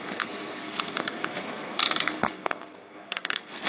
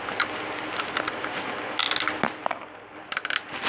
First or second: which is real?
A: second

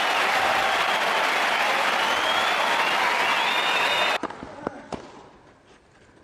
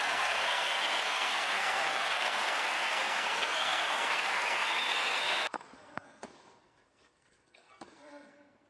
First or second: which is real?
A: first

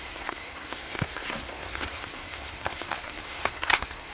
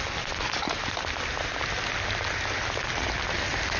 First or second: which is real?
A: second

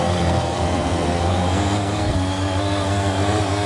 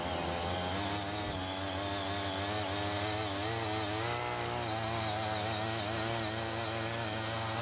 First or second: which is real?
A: second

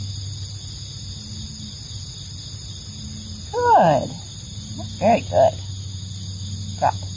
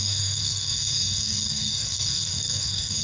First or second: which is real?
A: first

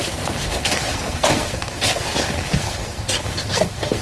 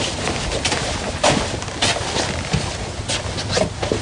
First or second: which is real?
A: second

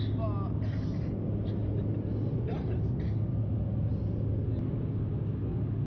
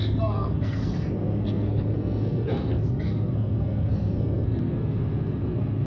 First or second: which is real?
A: first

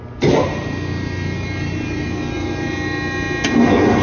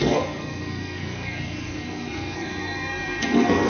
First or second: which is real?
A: first